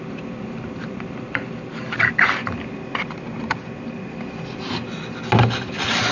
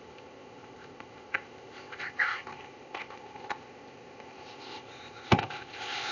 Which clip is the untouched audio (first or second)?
first